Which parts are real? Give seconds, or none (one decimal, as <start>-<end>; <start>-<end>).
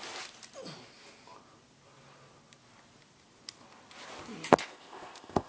0.0-4.6